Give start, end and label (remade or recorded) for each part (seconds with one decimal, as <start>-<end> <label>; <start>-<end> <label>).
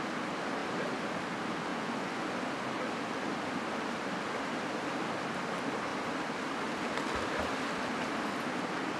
0.0-1.7 recorded; 1.7-2.3 remade; 2.3-9.0 recorded